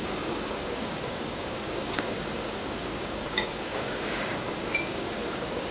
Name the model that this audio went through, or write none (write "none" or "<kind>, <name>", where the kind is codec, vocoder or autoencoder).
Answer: codec, DAC